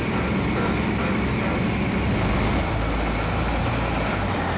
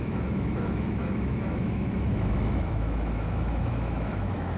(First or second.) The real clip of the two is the first